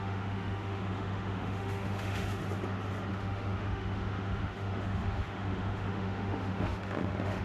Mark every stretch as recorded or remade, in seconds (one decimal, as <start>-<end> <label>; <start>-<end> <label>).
0.0-2.4 remade; 2.4-3.1 recorded; 3.1-7.4 remade